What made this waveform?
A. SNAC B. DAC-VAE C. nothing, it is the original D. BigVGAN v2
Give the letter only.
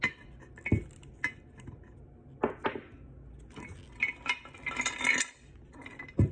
C